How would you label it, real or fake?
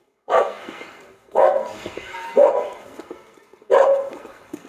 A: fake